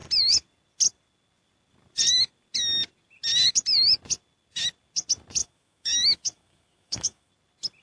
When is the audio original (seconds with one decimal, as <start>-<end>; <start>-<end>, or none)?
0.0-5.4; 7.3-7.8